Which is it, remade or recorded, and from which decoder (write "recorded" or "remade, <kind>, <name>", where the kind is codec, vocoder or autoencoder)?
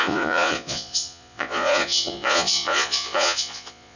remade, vocoder, Vocos